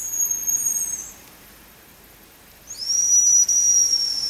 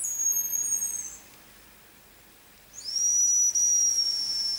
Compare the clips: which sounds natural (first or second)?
second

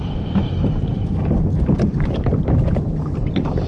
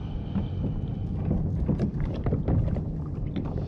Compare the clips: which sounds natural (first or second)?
second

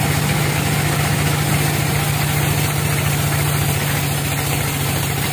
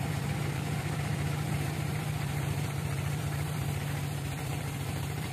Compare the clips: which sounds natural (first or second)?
first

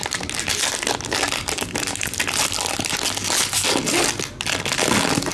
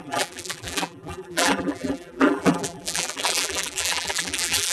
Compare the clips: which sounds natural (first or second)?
first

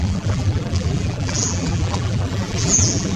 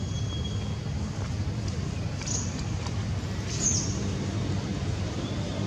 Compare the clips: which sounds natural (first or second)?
second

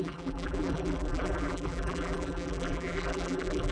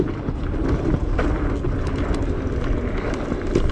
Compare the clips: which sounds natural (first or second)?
second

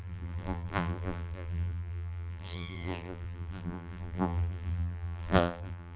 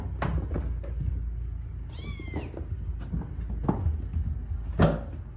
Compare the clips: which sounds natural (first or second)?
second